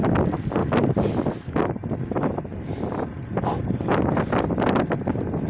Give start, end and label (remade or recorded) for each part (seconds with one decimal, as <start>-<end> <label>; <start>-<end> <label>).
0.0-5.5 recorded